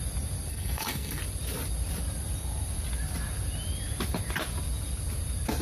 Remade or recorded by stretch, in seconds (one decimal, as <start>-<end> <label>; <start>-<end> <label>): 0.0-0.5 recorded; 0.5-1.2 remade; 1.2-5.6 recorded

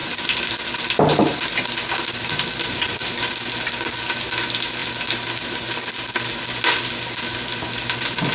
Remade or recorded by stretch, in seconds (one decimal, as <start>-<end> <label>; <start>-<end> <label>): 0.0-8.3 recorded

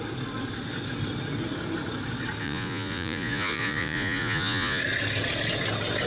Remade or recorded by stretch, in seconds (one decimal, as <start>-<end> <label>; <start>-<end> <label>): 0.0-2.4 recorded; 2.4-4.8 remade; 4.8-6.1 recorded

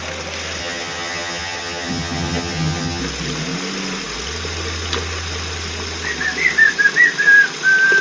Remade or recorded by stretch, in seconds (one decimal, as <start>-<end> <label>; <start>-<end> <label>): 0.0-0.6 recorded; 0.6-3.0 remade; 3.0-8.0 recorded

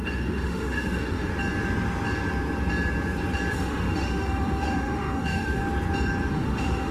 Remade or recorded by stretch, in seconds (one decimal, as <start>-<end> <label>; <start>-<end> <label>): 0.0-1.3 remade; 1.3-3.5 recorded; 3.5-5.6 remade; 5.6-6.3 recorded; 6.3-6.9 remade